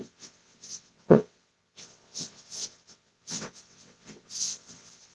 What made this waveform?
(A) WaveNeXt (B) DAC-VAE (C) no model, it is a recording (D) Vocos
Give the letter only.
A